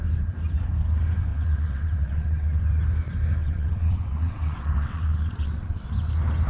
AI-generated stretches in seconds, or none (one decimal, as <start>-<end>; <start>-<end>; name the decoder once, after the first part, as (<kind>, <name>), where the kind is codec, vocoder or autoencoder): 1.3-2.8 (vocoder, WaveNeXt); 3.4-5.9